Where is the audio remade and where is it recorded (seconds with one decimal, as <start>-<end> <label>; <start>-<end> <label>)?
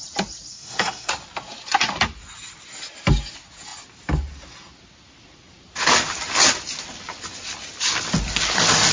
0.0-0.5 recorded; 0.5-1.1 remade; 1.1-8.9 recorded